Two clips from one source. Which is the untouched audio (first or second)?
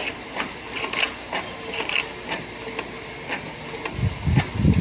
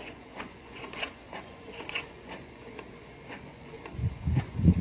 first